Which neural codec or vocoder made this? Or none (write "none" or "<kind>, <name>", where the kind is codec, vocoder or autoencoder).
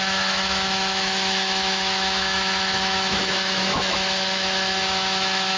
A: autoencoder, DAC-VAE